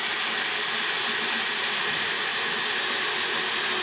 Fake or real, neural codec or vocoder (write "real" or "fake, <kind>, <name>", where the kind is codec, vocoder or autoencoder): real